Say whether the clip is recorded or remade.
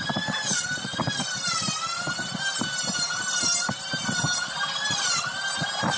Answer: recorded